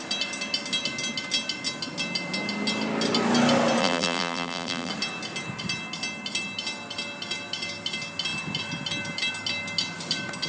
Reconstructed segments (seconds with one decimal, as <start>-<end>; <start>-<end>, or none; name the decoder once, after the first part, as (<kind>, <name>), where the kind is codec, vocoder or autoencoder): 3.8-4.9 (vocoder, BigVGAN v2)